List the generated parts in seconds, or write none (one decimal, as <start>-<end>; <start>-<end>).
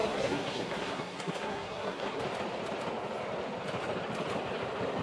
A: 0.0-2.2